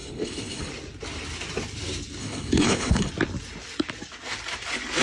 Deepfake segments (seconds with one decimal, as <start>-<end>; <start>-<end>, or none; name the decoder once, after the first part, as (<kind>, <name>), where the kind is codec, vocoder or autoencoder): 0.0-0.7 (codec, HILCodec); 2.2-3.1